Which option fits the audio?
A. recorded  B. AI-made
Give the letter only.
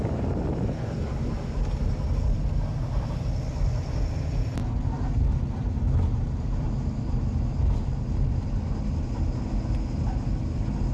A